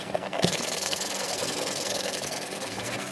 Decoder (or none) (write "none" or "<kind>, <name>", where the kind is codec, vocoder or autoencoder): codec, SNAC